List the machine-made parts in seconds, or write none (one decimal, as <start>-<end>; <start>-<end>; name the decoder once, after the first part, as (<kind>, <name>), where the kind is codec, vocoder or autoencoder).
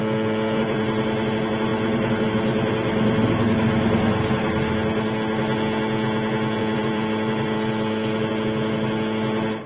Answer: 0.0-0.8 (vocoder, BigVGAN v2); 6.6-8.3